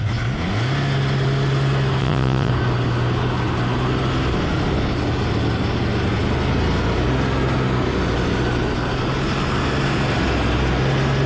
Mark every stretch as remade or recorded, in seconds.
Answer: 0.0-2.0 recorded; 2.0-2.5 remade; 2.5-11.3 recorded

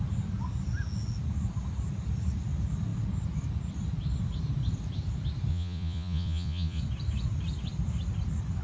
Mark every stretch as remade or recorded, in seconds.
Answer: 0.0-5.5 recorded; 5.5-6.8 remade; 6.8-8.6 recorded